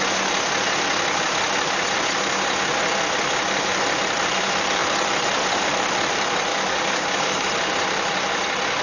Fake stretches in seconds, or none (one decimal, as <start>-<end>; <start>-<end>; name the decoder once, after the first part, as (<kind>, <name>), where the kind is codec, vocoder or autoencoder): 6.5-7.5 (codec, DAC)